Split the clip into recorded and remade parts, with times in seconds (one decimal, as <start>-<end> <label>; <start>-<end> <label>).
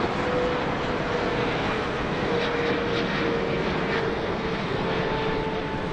0.0-1.2 recorded; 1.2-2.3 remade; 2.3-4.1 recorded; 4.1-5.0 remade; 5.0-5.9 recorded